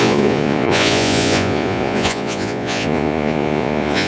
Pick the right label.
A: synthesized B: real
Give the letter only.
A